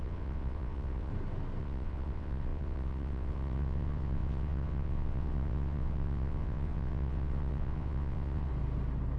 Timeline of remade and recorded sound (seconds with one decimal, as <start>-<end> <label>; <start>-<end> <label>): 0.0-1.1 remade; 1.1-1.6 recorded; 1.6-8.5 remade; 8.5-9.2 recorded